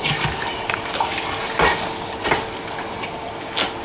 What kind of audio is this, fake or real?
real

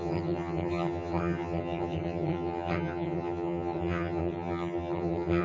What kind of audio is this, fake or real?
fake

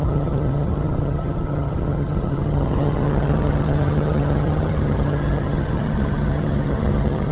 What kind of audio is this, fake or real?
fake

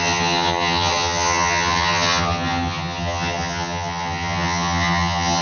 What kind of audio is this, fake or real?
fake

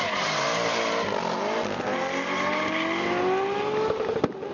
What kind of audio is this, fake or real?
real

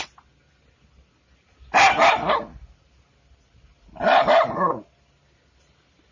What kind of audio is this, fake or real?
real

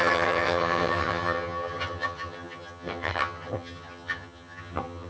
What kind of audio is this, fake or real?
fake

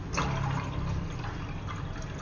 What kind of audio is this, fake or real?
real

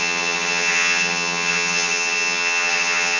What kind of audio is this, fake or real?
fake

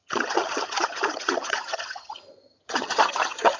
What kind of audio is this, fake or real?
fake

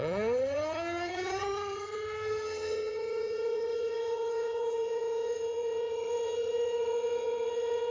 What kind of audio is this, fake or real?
fake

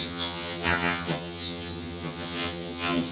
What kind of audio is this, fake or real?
fake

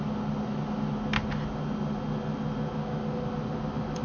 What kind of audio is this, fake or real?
real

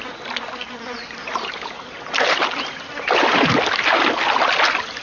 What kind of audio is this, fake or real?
real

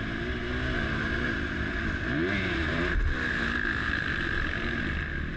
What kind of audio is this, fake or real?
real